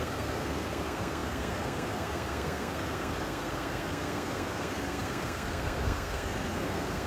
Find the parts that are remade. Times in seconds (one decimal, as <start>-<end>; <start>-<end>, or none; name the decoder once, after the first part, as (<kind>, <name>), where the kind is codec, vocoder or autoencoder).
0.0-7.1 (codec, SNAC)